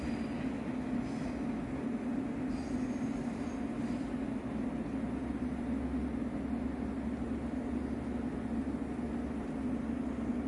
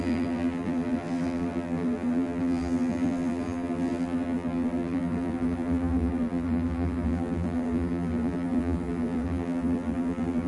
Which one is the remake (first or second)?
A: second